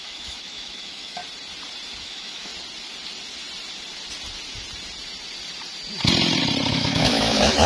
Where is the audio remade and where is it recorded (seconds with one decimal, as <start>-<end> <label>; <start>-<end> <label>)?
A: 0.0-1.2 remade; 1.2-2.0 recorded; 2.0-2.5 remade; 2.5-6.7 recorded; 6.7-7.7 remade